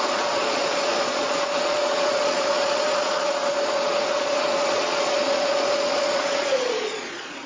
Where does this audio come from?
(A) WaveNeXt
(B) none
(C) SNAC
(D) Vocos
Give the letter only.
D